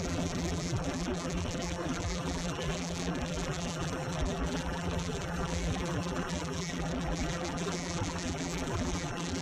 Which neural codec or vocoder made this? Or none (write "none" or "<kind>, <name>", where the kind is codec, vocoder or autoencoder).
vocoder, BigVGAN v2